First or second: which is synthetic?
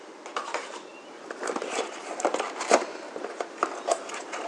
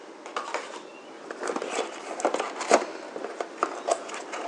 first